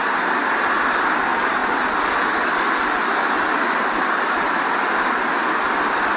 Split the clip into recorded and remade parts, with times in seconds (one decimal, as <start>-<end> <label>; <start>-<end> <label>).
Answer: 0.0-6.2 recorded